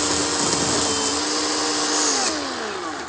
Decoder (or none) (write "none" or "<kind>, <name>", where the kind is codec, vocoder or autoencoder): none